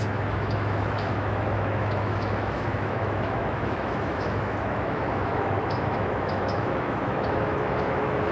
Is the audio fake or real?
fake